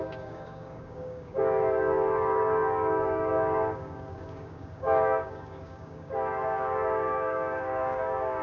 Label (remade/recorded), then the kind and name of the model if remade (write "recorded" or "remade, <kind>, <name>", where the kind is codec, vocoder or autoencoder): remade, codec, DAC